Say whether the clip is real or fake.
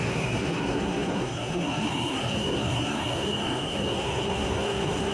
fake